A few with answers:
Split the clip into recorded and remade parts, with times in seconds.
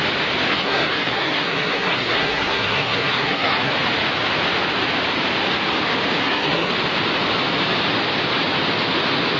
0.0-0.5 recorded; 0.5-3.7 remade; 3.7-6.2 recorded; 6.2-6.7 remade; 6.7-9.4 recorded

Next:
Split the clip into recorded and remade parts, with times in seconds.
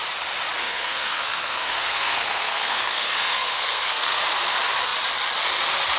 0.0-0.6 recorded; 0.6-4.2 remade; 4.2-6.0 recorded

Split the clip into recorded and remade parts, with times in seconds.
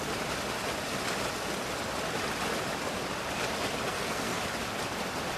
0.0-3.9 recorded; 3.9-4.4 remade; 4.4-5.4 recorded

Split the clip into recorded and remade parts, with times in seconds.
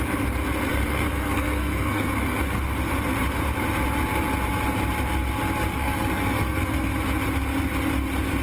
0.0-0.7 recorded; 0.7-2.6 remade; 2.6-5.7 recorded; 5.7-6.9 remade; 6.9-8.4 recorded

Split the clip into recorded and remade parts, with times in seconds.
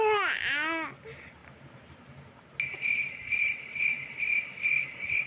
0.0-5.3 recorded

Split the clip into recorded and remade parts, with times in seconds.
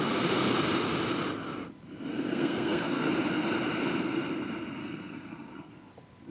0.0-2.1 recorded; 2.1-3.1 remade; 3.1-4.8 recorded; 4.8-5.7 remade; 5.7-6.3 recorded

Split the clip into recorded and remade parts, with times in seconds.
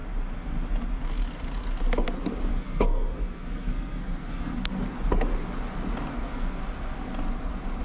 0.0-2.5 recorded; 2.5-4.9 remade; 4.9-6.1 recorded; 6.1-6.6 remade; 6.6-7.8 recorded